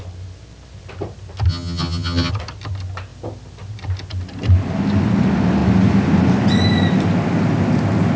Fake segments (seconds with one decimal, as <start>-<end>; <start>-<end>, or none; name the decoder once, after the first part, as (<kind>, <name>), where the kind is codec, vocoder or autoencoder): 1.5-2.3 (vocoder, HiFi-GAN)